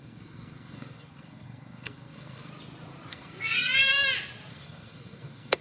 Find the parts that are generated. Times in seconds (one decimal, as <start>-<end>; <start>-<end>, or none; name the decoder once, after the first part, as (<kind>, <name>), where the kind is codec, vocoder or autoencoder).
0.0-2.5 (codec, SNAC); 3.1-3.9; 4.5-5.6